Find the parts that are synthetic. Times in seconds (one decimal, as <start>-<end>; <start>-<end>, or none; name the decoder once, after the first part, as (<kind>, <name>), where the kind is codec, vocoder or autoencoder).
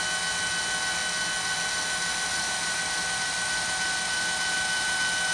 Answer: 2.3-2.8 (vocoder, BigVGAN v2)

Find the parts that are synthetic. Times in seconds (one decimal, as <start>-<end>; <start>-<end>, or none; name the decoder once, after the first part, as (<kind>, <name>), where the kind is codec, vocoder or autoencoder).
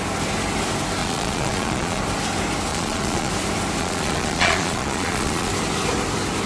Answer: 1.0-2.0 (vocoder, Vocos); 2.7-3.3; 3.8-5.5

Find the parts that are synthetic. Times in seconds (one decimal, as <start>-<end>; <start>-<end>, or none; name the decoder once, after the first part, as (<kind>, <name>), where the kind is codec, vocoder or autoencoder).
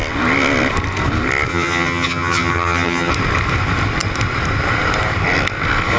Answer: 1.5-3.1 (vocoder, HiFi-GAN)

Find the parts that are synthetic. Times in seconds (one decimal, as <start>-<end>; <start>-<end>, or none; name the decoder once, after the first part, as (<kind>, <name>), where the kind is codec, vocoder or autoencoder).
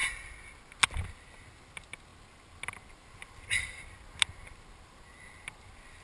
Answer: none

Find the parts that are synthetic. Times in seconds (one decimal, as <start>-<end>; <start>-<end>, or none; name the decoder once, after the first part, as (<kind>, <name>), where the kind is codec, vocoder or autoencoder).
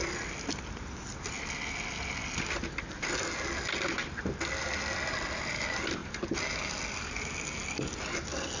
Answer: none